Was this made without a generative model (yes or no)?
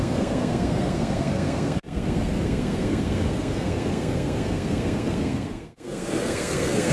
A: no